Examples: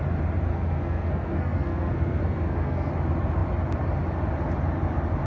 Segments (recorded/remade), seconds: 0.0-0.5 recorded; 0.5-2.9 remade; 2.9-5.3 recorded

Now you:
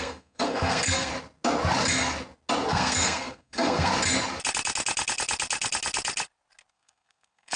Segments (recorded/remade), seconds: 0.0-1.1 remade; 1.1-2.7 recorded; 2.7-3.9 remade; 3.9-6.7 recorded; 6.7-7.6 remade

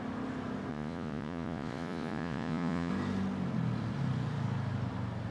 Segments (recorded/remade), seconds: 0.0-0.7 recorded; 0.7-2.9 remade; 2.9-5.3 recorded